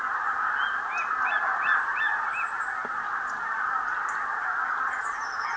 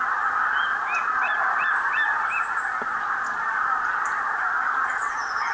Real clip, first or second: first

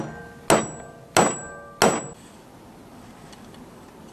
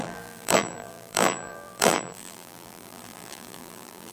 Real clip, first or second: first